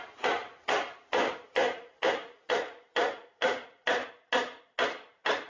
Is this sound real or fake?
real